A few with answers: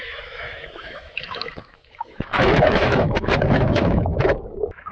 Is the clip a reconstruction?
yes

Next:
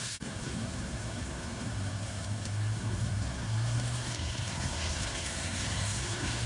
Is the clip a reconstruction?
yes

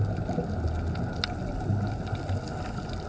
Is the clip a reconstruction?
no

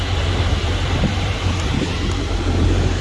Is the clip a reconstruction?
yes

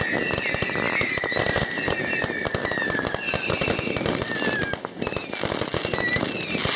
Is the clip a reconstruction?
no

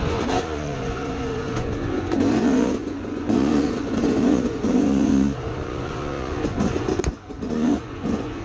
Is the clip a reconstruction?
yes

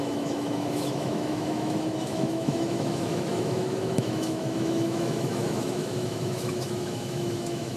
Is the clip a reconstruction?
yes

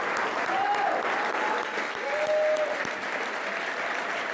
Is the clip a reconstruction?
no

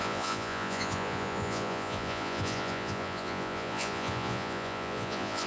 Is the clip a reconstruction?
yes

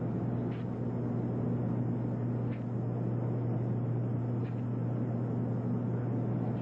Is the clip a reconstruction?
no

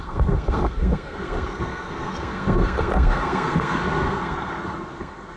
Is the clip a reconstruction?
yes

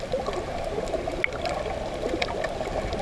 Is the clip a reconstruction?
no